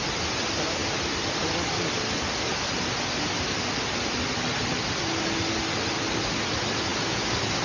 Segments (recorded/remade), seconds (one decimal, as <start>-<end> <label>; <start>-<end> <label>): 0.0-7.6 recorded